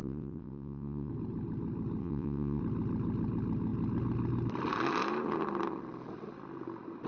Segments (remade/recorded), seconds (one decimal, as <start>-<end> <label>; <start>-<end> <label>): 0.0-1.1 remade; 1.1-2.0 recorded; 2.0-2.6 remade; 2.6-7.1 recorded